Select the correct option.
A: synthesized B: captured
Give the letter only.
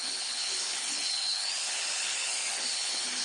A